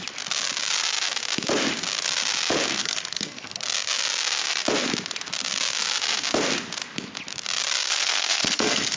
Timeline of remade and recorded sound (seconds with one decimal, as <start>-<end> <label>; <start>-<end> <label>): 0.0-2.8 recorded; 2.8-3.6 remade; 3.6-7.9 recorded; 7.9-9.0 remade